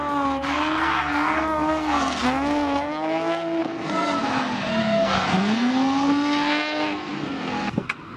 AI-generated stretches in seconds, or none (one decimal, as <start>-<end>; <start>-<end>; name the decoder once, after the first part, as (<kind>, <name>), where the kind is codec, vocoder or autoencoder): 0.0-8.2 (codec, SNAC)

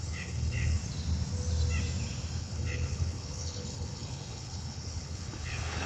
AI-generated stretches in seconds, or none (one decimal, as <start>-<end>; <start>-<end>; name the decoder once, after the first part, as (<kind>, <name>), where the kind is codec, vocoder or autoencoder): 0.0-0.8 (codec, HILCodec); 2.4-5.9

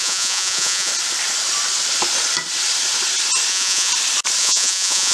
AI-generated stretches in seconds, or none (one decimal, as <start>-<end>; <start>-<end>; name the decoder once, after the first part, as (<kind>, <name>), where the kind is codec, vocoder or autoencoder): 0.0-0.9 (vocoder, Vocos); 3.5-3.9; 4.4-5.1